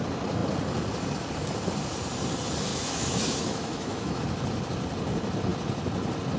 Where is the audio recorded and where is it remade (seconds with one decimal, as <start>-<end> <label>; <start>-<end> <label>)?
0.0-2.7 recorded; 2.7-4.2 remade; 4.2-6.4 recorded